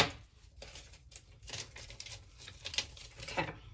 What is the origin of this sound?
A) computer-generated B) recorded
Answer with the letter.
B